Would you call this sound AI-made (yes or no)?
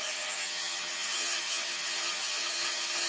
yes